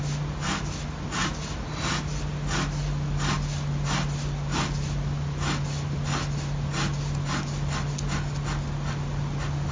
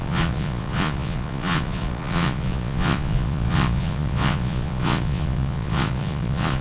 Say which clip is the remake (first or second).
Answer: second